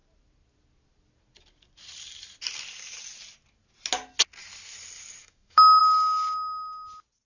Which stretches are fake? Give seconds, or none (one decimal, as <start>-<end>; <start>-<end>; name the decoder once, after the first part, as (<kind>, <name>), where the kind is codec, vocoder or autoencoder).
5.2-5.8 (autoencoder, DAC-VAE)